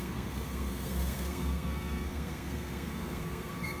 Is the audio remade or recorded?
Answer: remade